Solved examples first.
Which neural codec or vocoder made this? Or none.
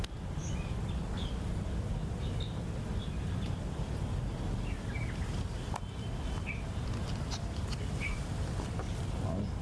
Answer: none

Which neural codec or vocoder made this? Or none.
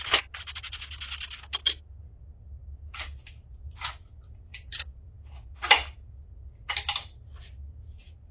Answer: none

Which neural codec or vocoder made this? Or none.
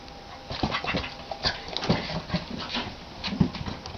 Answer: none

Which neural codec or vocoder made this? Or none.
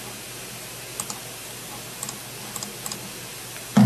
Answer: none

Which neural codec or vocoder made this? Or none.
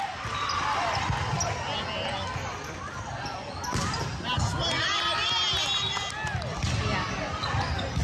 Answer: none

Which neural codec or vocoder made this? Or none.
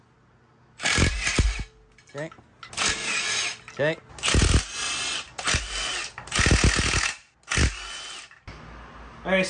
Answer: none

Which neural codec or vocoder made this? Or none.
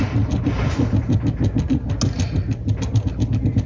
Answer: none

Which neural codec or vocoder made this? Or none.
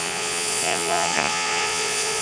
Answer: vocoder, Vocos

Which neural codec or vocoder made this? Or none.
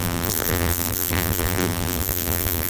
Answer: vocoder, BigVGAN v2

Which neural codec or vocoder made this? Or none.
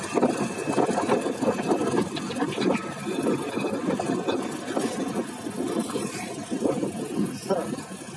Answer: none